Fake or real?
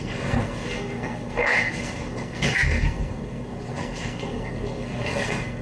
fake